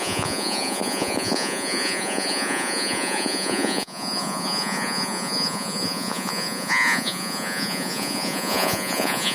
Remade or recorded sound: remade